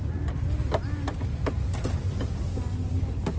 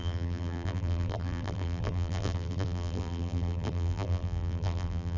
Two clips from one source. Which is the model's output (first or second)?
second